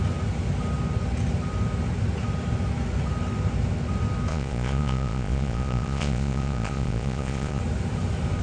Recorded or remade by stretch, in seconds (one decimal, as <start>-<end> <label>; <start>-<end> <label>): 0.0-4.3 recorded; 4.3-7.6 remade; 7.6-8.4 recorded